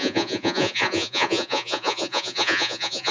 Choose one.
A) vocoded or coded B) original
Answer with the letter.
A